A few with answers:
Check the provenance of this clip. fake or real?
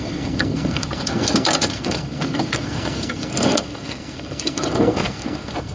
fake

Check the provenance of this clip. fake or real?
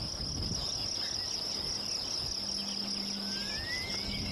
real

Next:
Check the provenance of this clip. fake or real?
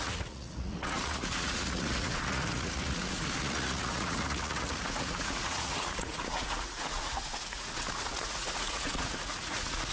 fake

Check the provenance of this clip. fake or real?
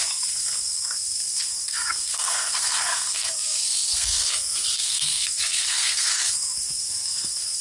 fake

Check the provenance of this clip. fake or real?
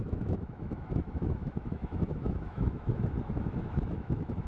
fake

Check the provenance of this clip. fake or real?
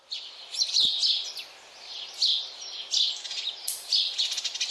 real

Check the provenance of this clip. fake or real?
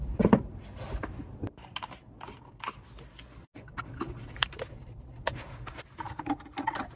real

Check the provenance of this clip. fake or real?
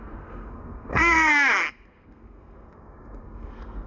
fake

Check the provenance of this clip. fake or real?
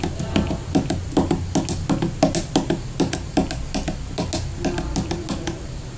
real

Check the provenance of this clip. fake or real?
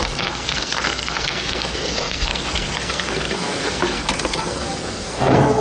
fake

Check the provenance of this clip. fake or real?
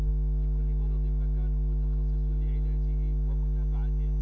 real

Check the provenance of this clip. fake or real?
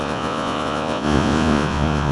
fake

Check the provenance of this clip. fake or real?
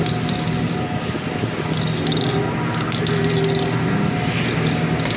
real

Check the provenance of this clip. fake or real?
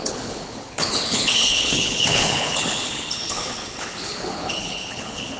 fake